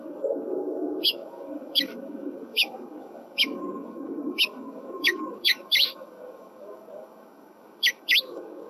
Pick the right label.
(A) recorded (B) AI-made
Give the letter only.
B